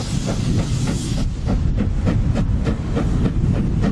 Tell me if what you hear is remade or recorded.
recorded